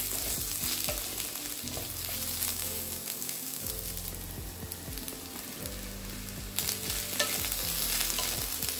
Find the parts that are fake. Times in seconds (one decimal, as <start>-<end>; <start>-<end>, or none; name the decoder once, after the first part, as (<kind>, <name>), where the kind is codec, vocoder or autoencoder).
2.5-3.7 (codec, DAC)